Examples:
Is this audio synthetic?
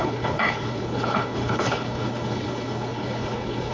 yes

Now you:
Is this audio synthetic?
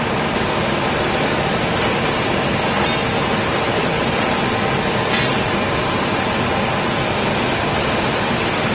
no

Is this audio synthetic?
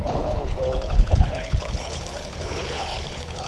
yes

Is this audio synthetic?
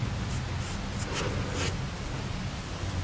no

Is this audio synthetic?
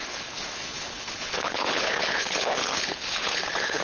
yes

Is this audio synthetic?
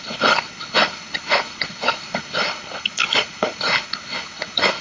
yes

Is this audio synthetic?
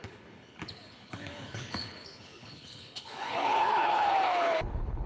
yes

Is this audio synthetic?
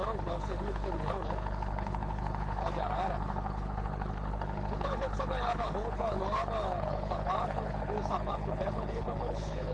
yes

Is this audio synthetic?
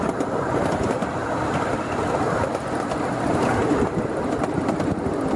no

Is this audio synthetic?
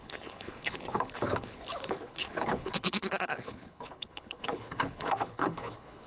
yes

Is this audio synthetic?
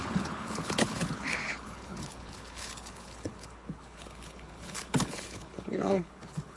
yes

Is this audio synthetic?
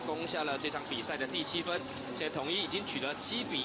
no